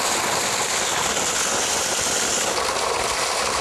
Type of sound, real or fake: real